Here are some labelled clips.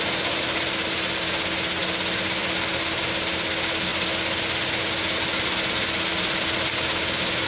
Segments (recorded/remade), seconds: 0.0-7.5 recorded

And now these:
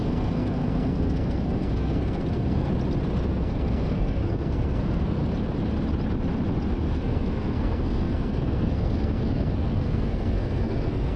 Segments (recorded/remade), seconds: 0.0-2.7 remade; 2.7-3.3 recorded; 3.3-5.2 remade; 5.2-6.9 recorded; 6.9-11.2 remade

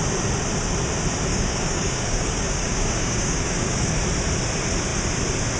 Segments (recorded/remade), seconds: 0.0-1.3 recorded; 1.3-3.9 remade; 3.9-5.6 recorded

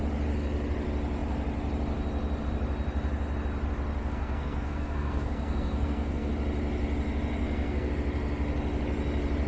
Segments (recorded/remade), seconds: 0.0-4.0 recorded; 4.0-6.3 remade; 6.3-7.4 recorded; 7.4-7.9 remade; 7.9-9.5 recorded

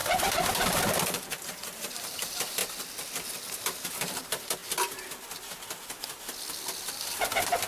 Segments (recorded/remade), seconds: 0.0-2.6 remade; 2.6-3.6 recorded; 3.6-4.6 remade; 4.6-7.3 recorded; 7.3-7.7 remade